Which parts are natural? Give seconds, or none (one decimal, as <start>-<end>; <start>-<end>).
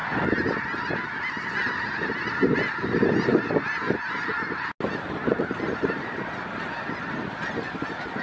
0.0-8.2